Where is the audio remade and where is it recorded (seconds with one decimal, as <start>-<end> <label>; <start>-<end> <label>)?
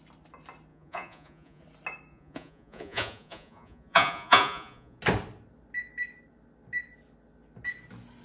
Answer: 0.0-0.7 recorded; 0.7-1.6 remade; 1.6-2.1 recorded; 2.1-5.0 remade; 5.0-8.2 recorded